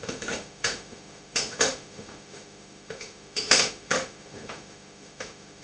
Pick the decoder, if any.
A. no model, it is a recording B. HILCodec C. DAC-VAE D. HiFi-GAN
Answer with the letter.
C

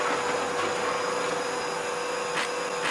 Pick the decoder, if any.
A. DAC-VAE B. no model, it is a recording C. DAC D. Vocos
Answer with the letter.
B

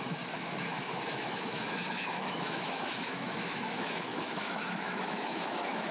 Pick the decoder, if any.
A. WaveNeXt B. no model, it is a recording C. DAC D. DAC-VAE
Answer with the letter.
D